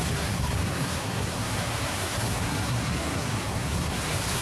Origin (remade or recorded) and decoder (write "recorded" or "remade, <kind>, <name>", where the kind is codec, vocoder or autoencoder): remade, codec, SNAC